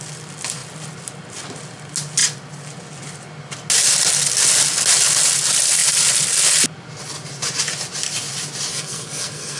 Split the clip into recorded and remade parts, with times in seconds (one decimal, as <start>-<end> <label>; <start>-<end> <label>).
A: 0.0-8.7 recorded; 8.7-9.6 remade